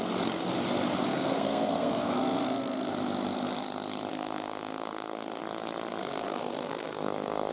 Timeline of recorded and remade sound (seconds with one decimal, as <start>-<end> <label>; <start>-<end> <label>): 0.0-1.1 recorded; 1.1-2.9 remade; 2.9-4.1 recorded; 4.1-5.4 remade; 5.4-6.0 recorded; 6.0-7.5 remade